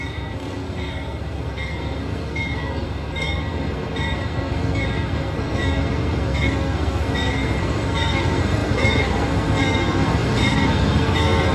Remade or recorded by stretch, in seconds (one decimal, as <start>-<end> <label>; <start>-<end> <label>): 0.0-11.5 remade